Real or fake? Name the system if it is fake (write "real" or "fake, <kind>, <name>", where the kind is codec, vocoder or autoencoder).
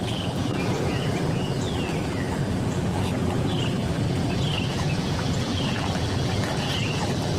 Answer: fake, vocoder, BigVGAN v2